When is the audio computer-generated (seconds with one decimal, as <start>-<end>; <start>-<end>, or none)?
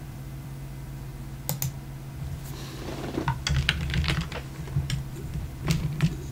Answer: 0.0-1.1; 4.9-6.3